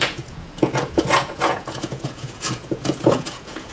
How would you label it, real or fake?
fake